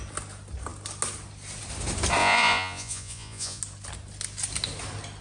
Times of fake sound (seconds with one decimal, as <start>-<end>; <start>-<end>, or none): 2.2-3.6